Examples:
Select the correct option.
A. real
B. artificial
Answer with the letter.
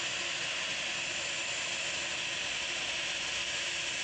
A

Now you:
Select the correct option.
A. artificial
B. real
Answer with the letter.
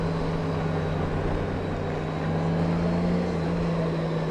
B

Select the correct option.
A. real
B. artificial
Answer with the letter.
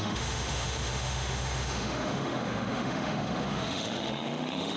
B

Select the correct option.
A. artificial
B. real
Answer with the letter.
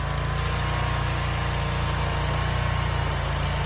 B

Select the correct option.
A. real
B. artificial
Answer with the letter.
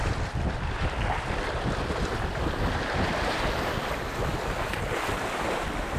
A